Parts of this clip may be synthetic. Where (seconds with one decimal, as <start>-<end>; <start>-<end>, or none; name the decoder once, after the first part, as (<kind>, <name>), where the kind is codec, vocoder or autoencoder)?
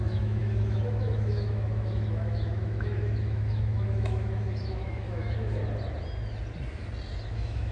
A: 0.0-5.6 (autoencoder, DAC-VAE); 7.3-7.7